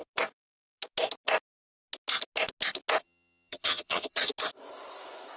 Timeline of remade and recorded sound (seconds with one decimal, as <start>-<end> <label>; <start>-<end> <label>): 0.0-3.0 recorded; 3.0-4.3 remade; 4.3-5.4 recorded